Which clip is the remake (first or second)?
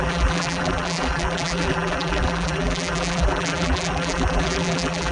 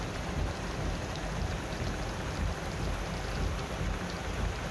first